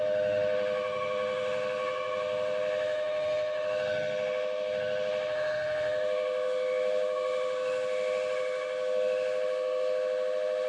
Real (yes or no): no